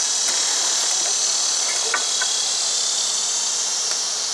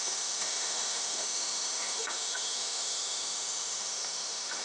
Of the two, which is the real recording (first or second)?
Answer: first